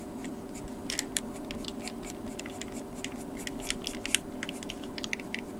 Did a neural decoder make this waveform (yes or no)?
no